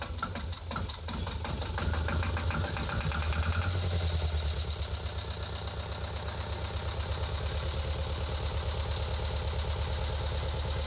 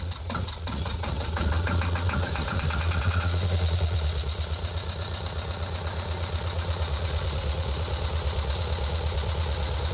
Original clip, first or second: first